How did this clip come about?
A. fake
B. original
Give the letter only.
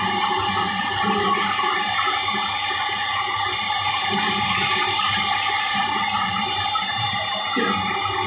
B